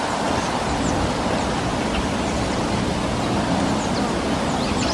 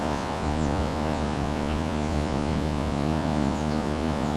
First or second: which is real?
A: first